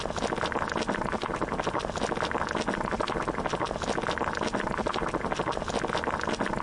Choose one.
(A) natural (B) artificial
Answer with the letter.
A